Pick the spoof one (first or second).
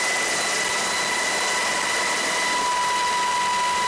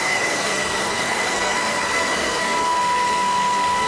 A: second